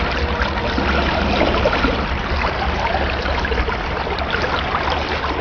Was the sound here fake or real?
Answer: real